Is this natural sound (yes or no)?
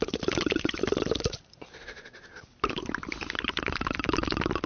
yes